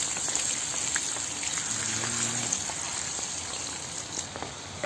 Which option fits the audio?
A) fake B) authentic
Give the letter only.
B